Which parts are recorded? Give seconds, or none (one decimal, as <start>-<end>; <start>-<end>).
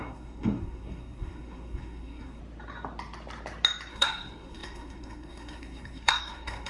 2.4-3.9